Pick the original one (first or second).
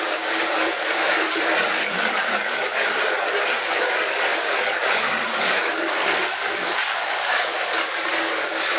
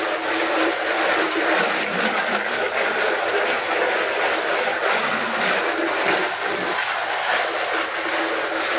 second